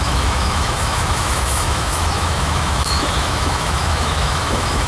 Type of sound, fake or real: fake